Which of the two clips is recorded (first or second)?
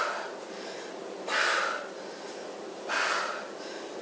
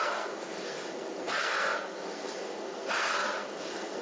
first